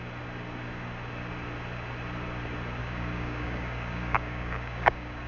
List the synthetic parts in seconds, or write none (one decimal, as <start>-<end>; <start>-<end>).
2.8-5.3